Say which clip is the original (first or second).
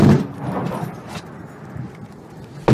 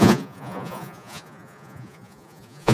first